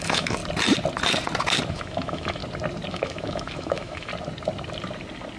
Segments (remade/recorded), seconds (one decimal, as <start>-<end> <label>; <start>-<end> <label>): 0.0-0.4 remade; 0.4-1.7 recorded; 1.7-2.4 remade; 2.4-2.9 recorded; 2.9-4.1 remade; 4.1-5.4 recorded